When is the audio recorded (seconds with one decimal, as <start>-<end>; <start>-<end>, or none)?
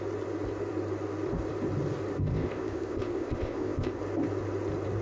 0.0-2.2; 4.0-5.0